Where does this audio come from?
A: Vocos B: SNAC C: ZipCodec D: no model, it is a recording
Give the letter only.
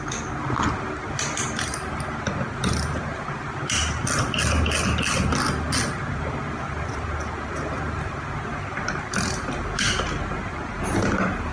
D